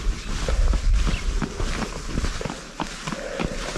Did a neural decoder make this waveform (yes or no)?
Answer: no